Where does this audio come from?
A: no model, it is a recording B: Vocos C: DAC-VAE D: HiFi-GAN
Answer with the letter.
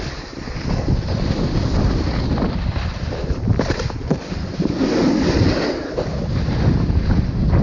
A